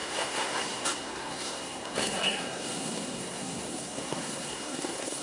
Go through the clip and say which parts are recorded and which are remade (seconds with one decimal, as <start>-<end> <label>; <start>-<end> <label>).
0.0-5.2 remade